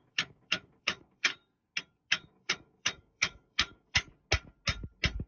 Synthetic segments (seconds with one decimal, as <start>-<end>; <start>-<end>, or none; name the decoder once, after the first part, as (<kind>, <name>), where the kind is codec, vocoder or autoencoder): 0.0-1.4 (autoencoder, DAC-VAE); 2.1-4.1